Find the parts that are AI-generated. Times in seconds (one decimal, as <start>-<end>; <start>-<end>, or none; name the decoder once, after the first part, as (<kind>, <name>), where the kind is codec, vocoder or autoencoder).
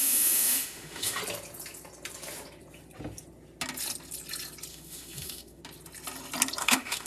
0.0-1.2 (autoencoder, DAC-VAE); 4.7-5.6; 6.6-7.1